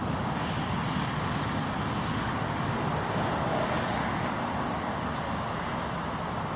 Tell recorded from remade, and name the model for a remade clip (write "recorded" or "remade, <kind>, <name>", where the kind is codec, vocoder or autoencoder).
recorded